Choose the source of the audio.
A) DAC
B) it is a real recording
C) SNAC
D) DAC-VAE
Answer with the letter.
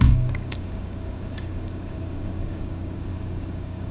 A